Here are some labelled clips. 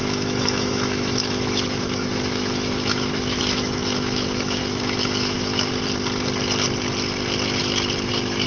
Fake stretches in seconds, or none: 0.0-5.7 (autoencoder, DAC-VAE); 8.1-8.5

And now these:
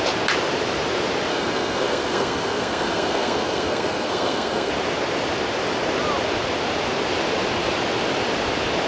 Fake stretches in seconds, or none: 1.3-4.7 (codec, SNAC)

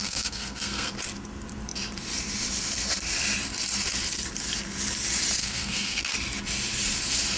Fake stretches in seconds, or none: 0.0-0.9 (codec, SNAC); 5.4-6.0

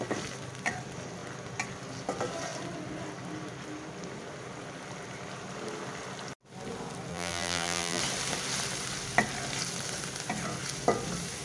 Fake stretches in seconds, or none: 7.1-8.0 (vocoder, BigVGAN v2)

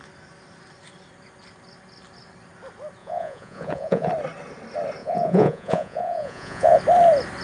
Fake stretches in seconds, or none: 3.0-4.1 (vocoder, Vocos); 5.0-6.8

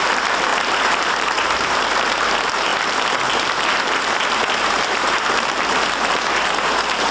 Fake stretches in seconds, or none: 0.0-0.5 (vocoder, BigVGAN v2); 1.0-2.7; 3.7-7.1

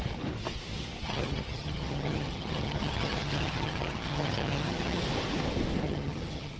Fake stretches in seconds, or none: 1.0-5.0 (vocoder, HiFi-GAN); 5.8-6.6